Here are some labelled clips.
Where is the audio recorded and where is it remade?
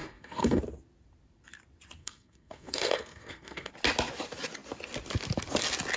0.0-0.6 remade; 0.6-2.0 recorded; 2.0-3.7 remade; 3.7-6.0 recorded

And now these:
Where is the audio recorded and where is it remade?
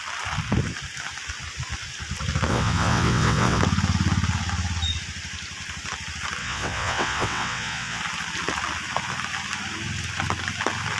0.0-2.5 recorded; 2.5-3.6 remade; 3.6-6.4 recorded; 6.4-8.0 remade; 8.0-11.0 recorded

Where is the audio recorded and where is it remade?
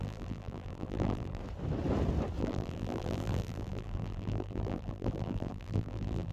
0.0-1.4 remade; 1.4-2.4 recorded; 2.4-6.3 remade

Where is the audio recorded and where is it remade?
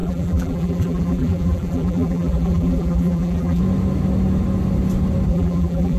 0.0-3.6 remade; 3.6-5.3 recorded; 5.3-6.0 remade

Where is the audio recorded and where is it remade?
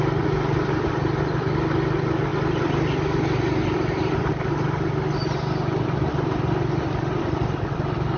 0.0-8.2 recorded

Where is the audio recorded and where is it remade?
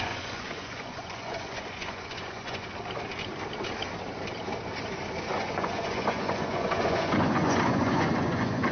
0.0-2.6 remade; 2.6-5.3 recorded; 5.3-8.7 remade